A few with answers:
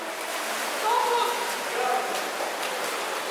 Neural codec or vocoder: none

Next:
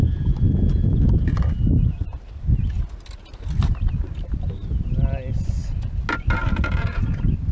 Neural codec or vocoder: none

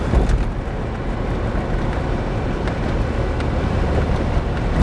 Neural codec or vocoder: none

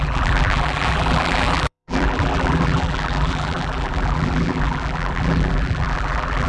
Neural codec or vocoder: vocoder, BigVGAN v2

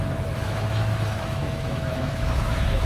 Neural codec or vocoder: autoencoder, DAC-VAE